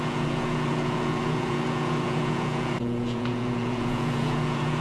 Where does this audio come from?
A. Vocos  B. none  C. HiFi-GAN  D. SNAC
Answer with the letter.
A